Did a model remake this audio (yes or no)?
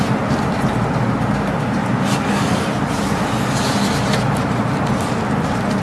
no